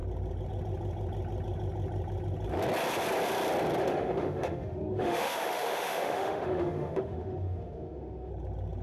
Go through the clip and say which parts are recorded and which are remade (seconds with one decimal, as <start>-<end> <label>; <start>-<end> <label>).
0.0-3.8 recorded; 3.8-8.3 remade; 8.3-8.8 recorded